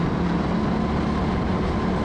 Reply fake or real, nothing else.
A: real